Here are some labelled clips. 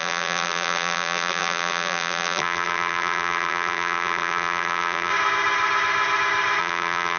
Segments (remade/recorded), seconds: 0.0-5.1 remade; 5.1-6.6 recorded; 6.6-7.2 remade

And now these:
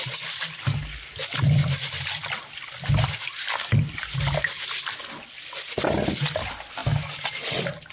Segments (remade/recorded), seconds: 0.0-7.9 recorded

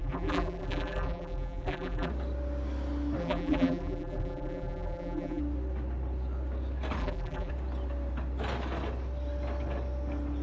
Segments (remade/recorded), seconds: 0.0-2.1 remade; 2.1-3.2 recorded; 3.2-5.4 remade; 5.4-7.0 recorded; 7.0-7.5 remade; 7.5-10.4 recorded

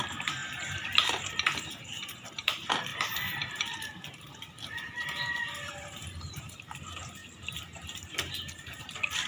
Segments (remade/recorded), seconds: 0.0-9.3 remade

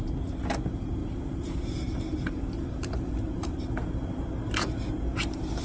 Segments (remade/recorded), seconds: 0.0-1.0 recorded; 1.0-4.2 remade; 4.2-5.6 recorded

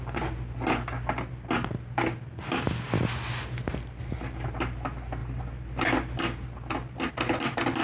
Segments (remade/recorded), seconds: 0.0-5.2 recorded; 5.2-7.1 remade; 7.1-7.8 recorded